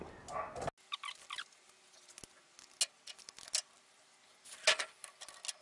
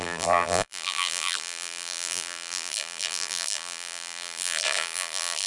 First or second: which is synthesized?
second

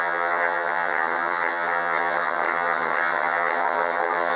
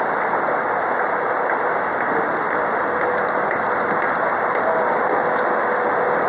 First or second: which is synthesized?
first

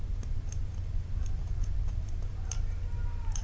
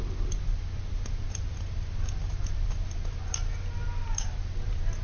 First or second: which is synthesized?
first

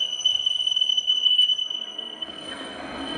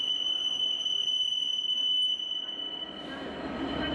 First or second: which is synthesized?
first